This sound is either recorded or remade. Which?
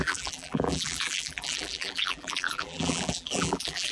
remade